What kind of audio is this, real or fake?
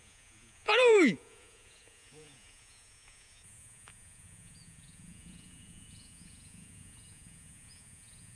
fake